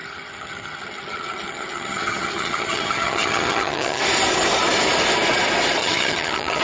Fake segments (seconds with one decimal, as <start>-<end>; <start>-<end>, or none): 0.0-4.0; 5.8-6.6